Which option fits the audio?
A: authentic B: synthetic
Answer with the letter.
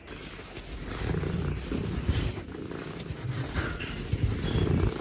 A